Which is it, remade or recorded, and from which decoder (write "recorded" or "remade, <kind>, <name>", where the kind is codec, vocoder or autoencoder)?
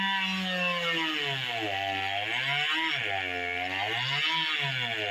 recorded